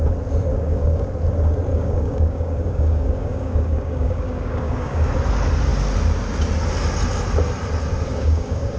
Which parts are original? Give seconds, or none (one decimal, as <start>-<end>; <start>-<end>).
0.0-0.5; 1.1-1.7; 5.1-8.1